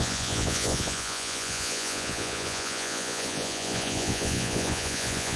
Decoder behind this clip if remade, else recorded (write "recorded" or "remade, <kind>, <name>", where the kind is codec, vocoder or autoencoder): remade, vocoder, Vocos